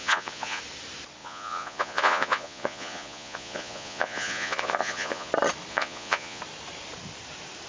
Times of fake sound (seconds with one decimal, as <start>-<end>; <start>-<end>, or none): 0.0-0.6; 1.2-5.3; 5.7-6.4

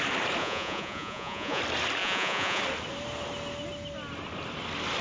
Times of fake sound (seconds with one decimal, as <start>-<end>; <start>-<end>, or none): 0.4-1.6; 2.0-2.6

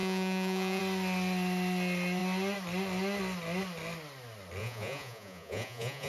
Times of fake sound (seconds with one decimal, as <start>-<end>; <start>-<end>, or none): 0.0-0.8; 4.6-6.1

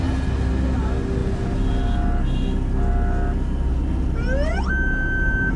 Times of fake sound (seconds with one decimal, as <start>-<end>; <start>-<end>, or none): none

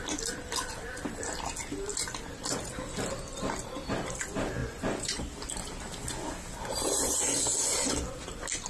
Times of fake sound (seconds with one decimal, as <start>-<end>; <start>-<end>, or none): 4.6-5.2